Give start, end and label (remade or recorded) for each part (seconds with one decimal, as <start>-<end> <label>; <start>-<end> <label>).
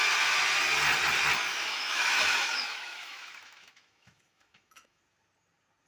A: 0.0-1.5 recorded; 1.5-5.0 remade; 5.0-5.9 recorded